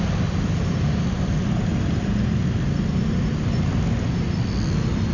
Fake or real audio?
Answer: real